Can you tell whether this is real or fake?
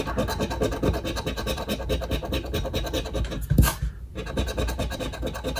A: real